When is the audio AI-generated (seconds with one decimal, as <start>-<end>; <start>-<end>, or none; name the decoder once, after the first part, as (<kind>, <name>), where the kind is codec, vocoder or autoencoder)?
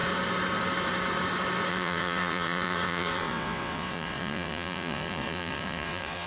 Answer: 1.7-6.3 (vocoder, WaveNeXt)